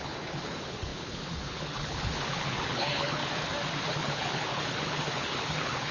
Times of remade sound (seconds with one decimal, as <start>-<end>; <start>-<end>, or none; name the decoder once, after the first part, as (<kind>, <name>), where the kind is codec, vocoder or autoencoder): 0.0-3.2 (codec, HILCodec); 3.9-5.9